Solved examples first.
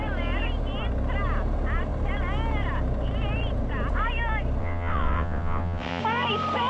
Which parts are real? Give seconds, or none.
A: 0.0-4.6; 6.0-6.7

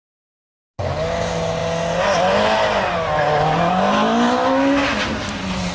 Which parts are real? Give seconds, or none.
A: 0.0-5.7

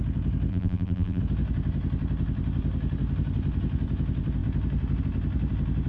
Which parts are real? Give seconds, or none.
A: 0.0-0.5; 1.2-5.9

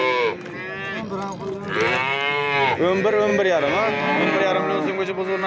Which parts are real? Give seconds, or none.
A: 0.0-1.7

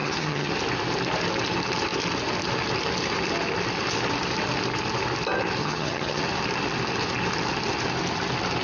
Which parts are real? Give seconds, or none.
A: 0.5-5.6; 6.2-8.6

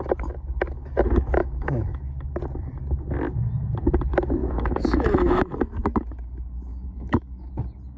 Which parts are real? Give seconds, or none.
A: 0.0-1.4; 2.4-4.4; 5.4-6.7; 7.5-8.0

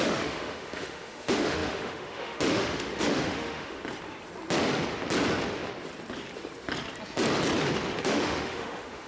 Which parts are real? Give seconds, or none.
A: 3.8-8.0

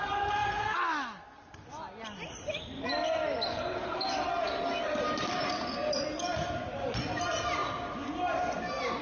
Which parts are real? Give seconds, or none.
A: 0.0-9.0